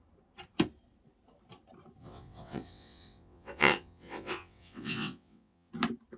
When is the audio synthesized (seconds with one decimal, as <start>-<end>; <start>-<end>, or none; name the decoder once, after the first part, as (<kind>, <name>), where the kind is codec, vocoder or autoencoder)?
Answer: 2.0-5.7 (vocoder, WaveNeXt)